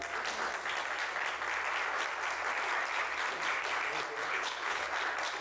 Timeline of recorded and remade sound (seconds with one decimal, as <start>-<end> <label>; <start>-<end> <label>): 0.0-4.2 recorded; 4.2-4.9 remade; 4.9-5.4 recorded